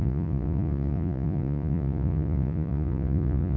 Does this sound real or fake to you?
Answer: fake